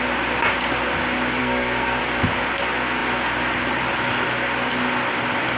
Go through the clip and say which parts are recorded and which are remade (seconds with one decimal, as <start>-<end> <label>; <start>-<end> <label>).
0.0-1.4 recorded; 1.4-2.0 remade; 2.0-5.6 recorded

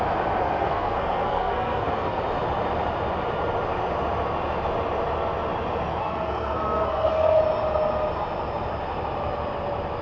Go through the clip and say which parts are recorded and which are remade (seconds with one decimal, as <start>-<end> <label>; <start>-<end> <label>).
0.0-0.4 recorded; 0.4-2.2 remade; 2.2-5.9 recorded; 5.9-7.4 remade; 7.4-10.0 recorded

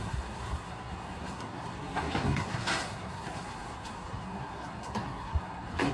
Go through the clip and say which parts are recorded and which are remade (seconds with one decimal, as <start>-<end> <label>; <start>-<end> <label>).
0.0-5.9 remade

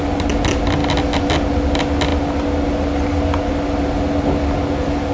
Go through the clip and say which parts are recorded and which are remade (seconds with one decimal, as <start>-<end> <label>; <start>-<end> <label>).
0.0-5.1 recorded

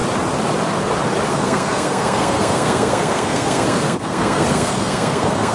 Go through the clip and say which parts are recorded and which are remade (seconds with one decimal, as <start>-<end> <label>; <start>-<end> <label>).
0.0-1.3 recorded; 1.3-5.5 remade

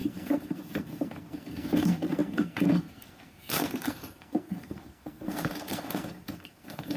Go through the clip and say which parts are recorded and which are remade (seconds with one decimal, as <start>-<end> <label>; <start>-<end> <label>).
0.0-7.0 remade

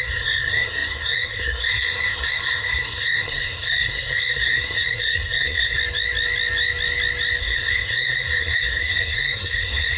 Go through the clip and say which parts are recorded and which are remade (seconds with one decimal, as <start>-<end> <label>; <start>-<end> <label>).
0.0-5.8 remade; 5.8-7.4 recorded; 7.4-10.0 remade

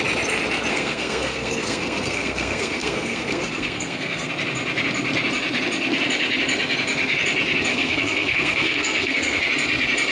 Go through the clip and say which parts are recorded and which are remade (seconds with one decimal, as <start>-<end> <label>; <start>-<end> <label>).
0.0-0.7 recorded; 0.7-4.3 remade; 4.3-7.7 recorded; 7.7-9.4 remade; 9.4-10.1 recorded